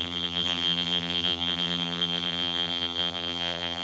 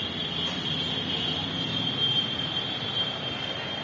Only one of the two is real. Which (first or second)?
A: second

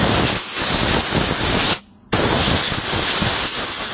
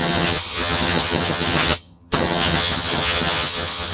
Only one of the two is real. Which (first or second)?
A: first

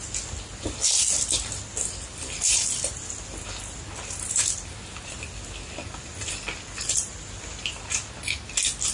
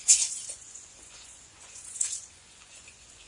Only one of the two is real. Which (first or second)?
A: first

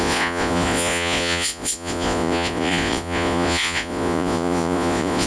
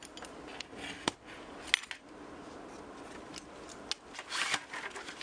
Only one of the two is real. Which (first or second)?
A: second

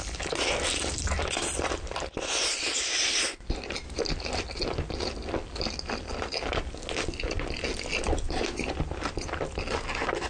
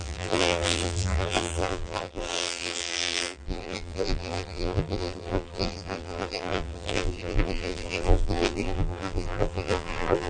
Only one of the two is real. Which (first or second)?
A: first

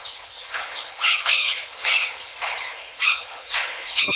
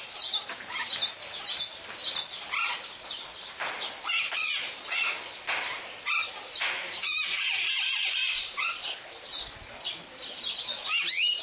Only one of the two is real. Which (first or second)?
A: second